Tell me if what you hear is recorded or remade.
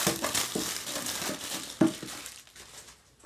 recorded